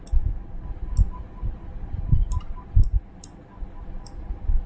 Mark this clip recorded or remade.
recorded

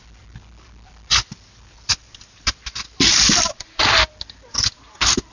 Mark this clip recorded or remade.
recorded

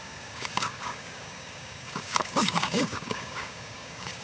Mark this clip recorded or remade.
remade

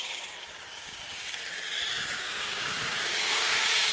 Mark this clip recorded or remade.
remade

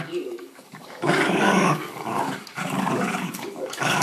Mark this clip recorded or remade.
remade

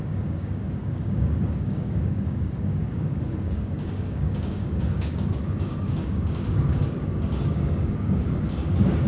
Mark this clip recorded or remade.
remade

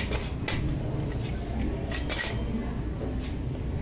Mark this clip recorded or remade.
recorded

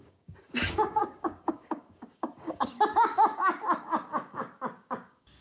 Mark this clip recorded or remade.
remade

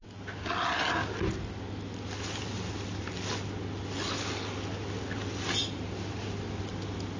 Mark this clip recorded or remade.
recorded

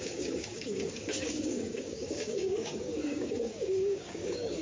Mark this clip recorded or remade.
remade